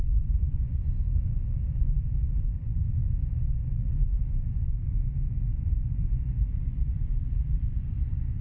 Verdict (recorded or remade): remade